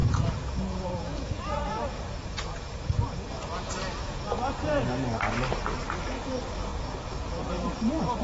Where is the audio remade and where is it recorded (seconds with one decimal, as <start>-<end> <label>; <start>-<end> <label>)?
0.0-3.3 remade; 3.3-4.0 recorded; 4.0-4.9 remade; 4.9-6.7 recorded; 6.7-7.5 remade; 7.5-8.2 recorded